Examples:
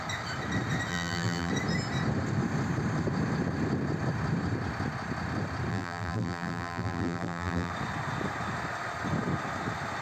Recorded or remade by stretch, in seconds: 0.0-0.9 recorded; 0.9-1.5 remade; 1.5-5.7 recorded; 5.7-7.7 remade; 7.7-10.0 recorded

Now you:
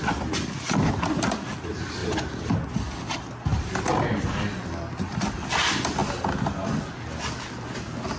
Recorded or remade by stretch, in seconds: 0.0-2.0 remade; 2.0-3.0 recorded; 3.0-3.5 remade; 3.5-4.8 recorded; 4.8-6.0 remade; 6.0-8.2 recorded

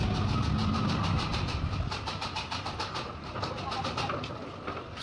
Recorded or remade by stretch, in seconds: 0.0-0.6 recorded; 0.6-3.5 remade; 3.5-5.0 recorded

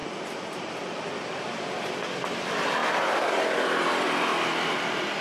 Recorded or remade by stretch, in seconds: 0.0-2.0 remade; 2.0-2.8 recorded; 2.8-3.3 remade; 3.3-5.2 recorded

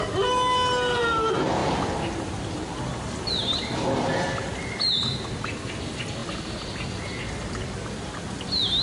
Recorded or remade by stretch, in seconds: 0.0-1.6 recorded; 1.6-5.7 remade; 5.7-8.8 recorded

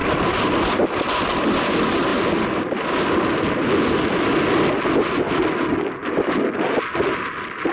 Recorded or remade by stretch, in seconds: 0.0-1.1 remade; 1.1-2.1 recorded; 2.1-3.5 remade; 3.5-6.0 recorded; 6.0-6.6 remade; 6.6-7.7 recorded

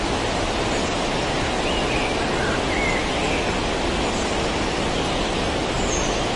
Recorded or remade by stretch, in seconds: 0.0-5.6 recorded; 5.6-6.4 remade